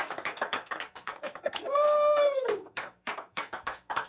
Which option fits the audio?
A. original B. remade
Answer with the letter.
B